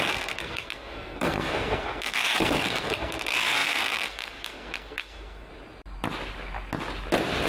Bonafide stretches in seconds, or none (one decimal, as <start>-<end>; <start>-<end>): 5.5-7.5